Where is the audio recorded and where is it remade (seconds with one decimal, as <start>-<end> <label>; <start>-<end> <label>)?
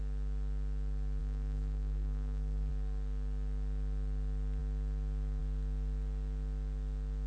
0.0-1.2 recorded; 1.2-2.7 remade; 2.7-7.3 recorded